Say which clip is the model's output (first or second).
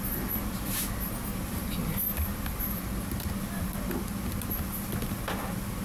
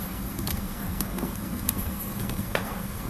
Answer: second